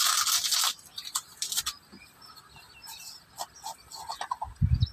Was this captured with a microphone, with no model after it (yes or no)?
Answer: yes